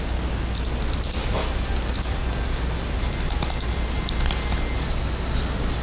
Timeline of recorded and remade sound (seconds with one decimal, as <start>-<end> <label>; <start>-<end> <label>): 0.0-5.8 recorded